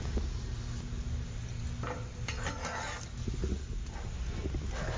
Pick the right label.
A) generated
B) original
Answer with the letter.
B